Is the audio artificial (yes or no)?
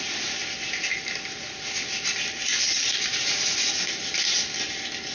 no